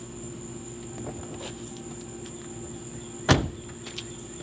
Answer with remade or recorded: recorded